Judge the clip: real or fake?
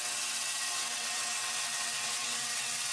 fake